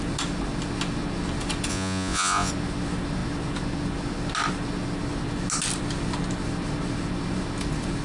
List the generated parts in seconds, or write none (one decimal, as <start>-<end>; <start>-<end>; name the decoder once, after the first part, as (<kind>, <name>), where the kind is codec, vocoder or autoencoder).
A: 1.7-2.5 (vocoder, Vocos)